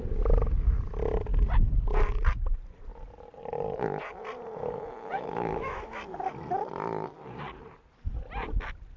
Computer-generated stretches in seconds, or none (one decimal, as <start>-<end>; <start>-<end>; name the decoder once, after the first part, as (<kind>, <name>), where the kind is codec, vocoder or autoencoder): 5.1-6.0 (autoencoder, DAC-VAE)